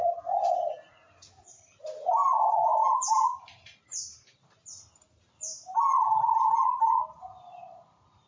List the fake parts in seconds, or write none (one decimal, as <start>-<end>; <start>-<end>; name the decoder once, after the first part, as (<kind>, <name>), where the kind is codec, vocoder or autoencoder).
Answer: 0.0-2.8 (vocoder, BigVGAN v2); 5.3-8.3

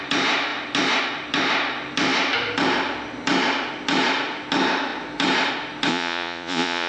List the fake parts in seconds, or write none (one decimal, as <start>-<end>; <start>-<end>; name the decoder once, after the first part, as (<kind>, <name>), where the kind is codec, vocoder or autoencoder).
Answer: 5.9-6.9 (vocoder, Vocos)